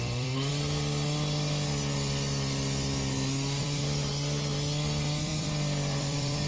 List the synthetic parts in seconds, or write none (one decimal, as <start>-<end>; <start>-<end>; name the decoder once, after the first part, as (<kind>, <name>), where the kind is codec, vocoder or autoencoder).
0.0-0.5 (vocoder, BigVGAN v2); 3.6-4.0; 5.2-6.5